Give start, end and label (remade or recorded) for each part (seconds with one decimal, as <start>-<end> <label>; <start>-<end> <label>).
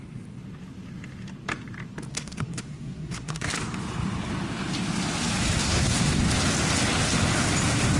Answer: 0.0-2.1 recorded; 2.1-3.5 remade; 3.5-5.6 recorded; 5.6-6.2 remade; 6.2-8.0 recorded